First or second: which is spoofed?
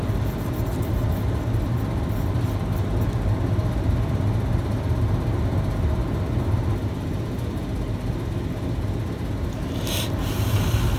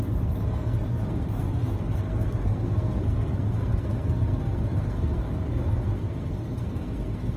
second